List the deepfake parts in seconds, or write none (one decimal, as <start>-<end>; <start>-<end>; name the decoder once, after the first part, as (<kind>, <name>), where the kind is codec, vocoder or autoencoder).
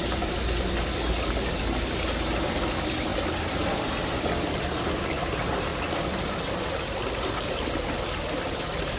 none